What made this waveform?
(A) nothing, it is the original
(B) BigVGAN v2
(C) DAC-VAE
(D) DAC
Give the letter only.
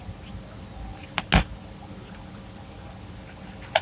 A